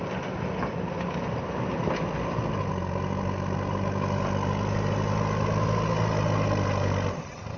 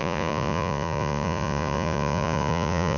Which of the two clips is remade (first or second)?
second